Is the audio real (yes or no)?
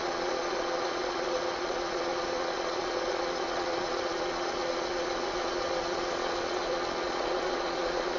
no